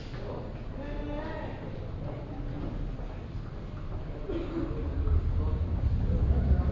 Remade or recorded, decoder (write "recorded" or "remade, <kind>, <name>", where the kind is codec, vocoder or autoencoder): recorded